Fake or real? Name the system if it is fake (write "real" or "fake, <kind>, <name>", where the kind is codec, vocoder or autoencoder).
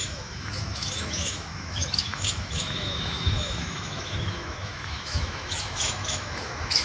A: fake, autoencoder, DAC-VAE